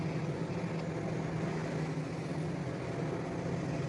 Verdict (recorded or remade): recorded